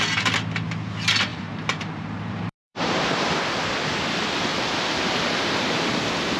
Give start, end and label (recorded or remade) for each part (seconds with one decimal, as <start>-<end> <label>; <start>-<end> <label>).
0.0-1.3 recorded; 1.3-3.4 remade; 3.4-4.5 recorded; 4.5-6.4 remade